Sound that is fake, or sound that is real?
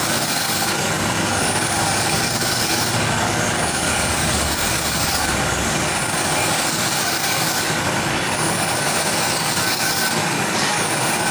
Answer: fake